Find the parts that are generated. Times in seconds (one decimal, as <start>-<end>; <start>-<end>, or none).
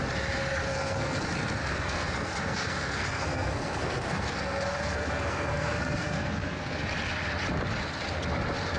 0.6-1.2; 1.6-6.8